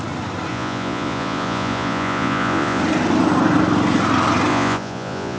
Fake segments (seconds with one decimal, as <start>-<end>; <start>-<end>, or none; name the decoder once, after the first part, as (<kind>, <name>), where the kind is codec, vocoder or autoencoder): 0.5-2.8 (vocoder, Vocos); 4.5-5.4